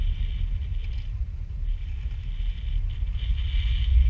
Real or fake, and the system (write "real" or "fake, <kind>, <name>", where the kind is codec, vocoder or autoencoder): real